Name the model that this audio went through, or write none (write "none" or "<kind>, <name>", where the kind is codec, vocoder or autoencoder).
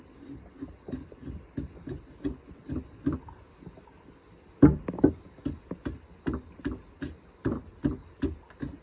none